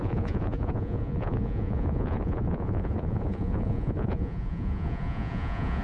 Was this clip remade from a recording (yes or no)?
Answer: yes